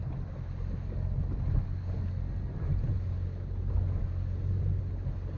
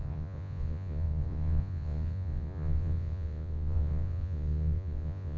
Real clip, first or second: first